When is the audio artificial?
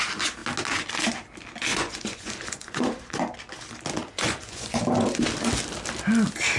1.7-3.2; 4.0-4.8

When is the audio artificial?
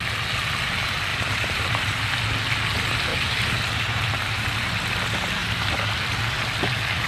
1.1-2.2; 3.1-4.7; 5.4-6.0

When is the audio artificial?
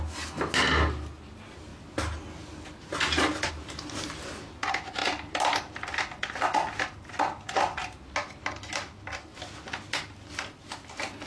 none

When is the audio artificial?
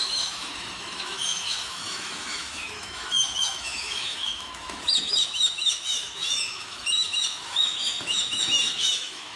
0.0-9.4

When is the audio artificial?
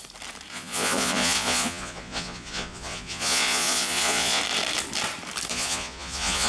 0.5-4.4; 5.5-6.5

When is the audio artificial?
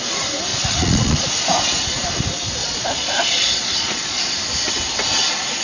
0.5-1.3; 2.6-4.2